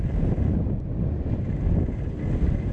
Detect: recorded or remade recorded